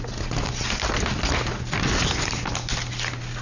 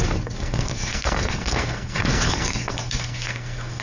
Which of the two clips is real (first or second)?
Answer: first